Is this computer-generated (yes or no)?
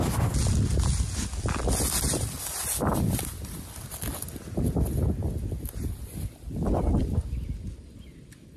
no